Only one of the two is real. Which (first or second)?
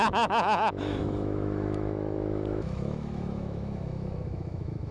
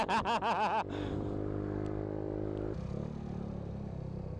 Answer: second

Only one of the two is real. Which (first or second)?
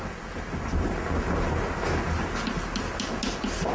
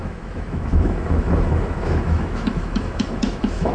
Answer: first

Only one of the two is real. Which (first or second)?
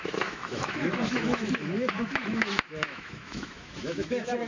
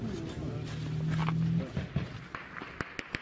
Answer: second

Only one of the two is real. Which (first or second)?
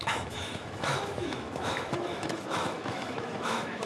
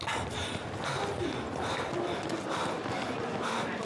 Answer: second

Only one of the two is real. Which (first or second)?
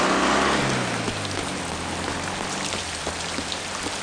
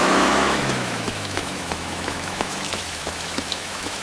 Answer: first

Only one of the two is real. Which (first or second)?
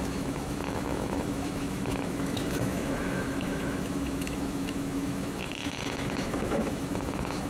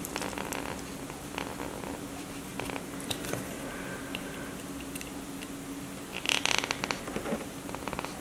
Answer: second